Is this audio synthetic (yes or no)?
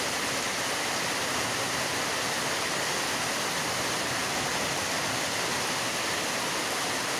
no